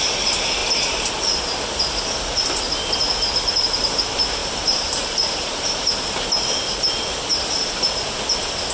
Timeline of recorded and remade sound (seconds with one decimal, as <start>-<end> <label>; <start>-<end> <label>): 0.0-0.6 recorded; 0.6-1.4 remade; 1.4-4.4 recorded; 4.4-5.9 remade; 5.9-7.3 recorded; 7.3-8.1 remade; 8.1-8.7 recorded